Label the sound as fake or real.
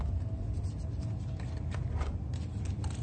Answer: real